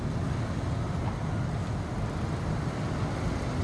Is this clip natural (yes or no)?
yes